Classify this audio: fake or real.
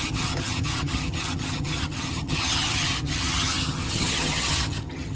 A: fake